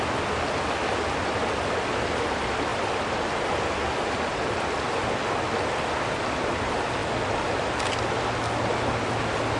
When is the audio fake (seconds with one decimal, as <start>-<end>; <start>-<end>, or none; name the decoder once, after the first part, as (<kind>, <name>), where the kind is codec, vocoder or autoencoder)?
none